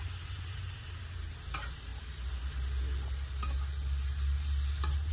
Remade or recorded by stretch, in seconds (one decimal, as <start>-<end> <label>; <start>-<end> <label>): 0.0-1.9 remade; 1.9-5.1 recorded